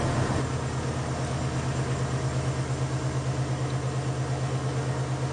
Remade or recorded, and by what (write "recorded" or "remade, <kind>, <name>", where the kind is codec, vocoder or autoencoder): recorded